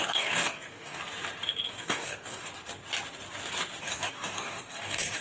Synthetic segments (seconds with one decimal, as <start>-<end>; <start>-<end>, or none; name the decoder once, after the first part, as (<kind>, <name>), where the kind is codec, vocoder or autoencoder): 0.0-1.0 (codec, DAC); 1.7-2.5; 3.8-5.2